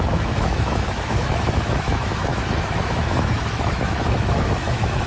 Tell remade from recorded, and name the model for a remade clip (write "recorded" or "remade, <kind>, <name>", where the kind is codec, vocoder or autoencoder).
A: remade, autoencoder, DAC-VAE